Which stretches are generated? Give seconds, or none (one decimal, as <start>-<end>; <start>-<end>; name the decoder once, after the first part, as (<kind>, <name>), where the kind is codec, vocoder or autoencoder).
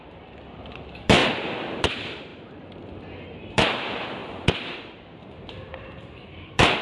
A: 0.0-2.3 (vocoder, BigVGAN v2); 3.5-6.8